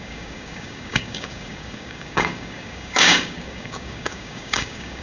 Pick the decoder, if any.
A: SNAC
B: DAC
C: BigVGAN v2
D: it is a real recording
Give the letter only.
B